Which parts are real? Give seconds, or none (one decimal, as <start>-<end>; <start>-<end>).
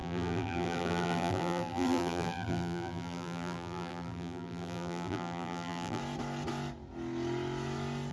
6.0-8.1